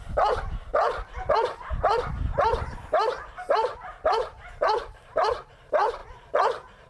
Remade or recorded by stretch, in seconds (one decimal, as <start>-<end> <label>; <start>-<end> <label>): 0.0-0.7 remade; 0.7-2.1 recorded; 2.1-6.9 remade